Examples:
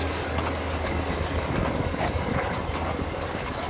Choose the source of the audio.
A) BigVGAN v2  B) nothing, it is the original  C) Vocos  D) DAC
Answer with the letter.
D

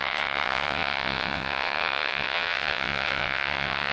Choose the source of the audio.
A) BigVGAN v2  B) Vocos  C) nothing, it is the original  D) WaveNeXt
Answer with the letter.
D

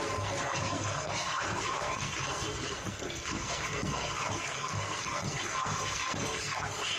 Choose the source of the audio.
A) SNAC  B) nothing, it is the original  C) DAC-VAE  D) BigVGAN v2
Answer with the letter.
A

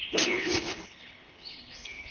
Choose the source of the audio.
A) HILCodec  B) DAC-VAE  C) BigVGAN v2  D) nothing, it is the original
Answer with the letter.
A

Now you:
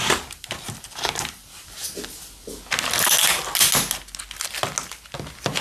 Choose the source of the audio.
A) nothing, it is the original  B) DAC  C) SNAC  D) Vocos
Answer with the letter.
A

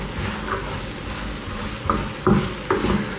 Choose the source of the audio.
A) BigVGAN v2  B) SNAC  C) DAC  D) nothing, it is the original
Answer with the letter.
D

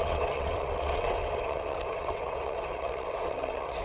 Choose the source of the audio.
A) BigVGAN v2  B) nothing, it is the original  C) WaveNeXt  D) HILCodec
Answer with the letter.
C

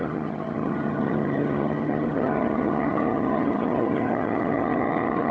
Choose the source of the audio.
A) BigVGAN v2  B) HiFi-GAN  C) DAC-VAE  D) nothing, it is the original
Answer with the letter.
B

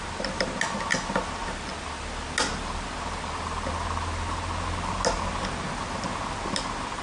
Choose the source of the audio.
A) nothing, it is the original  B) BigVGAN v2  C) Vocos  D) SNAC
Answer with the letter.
A